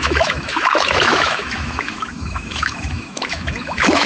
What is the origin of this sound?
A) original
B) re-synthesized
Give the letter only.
B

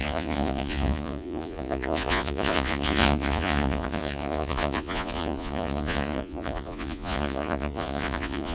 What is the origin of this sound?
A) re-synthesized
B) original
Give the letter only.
A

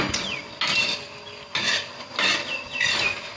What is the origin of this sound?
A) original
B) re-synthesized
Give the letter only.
A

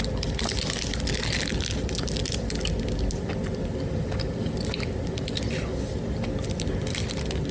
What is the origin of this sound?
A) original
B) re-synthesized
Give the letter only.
A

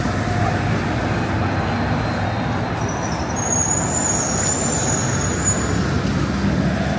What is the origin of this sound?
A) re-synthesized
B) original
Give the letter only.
B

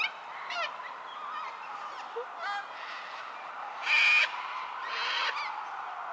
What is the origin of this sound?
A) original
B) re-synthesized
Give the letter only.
A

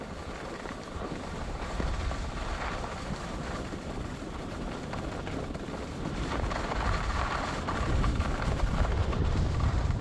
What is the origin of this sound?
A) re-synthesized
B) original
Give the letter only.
A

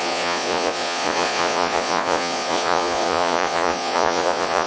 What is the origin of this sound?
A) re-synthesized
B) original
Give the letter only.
A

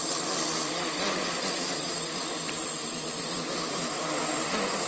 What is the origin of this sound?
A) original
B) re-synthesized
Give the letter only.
A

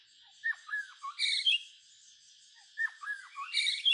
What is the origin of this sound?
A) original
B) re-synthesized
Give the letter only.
A